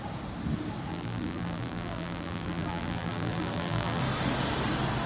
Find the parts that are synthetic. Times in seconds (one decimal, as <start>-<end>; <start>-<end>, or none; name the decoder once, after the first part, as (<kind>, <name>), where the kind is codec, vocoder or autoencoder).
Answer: 0.9-4.0 (vocoder, BigVGAN v2)